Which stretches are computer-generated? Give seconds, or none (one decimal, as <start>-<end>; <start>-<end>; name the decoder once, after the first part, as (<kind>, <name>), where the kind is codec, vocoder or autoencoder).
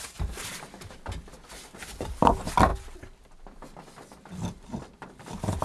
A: none